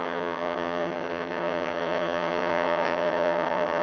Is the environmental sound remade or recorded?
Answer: remade